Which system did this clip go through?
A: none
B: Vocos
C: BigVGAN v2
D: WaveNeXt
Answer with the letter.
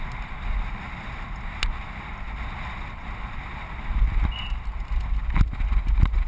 A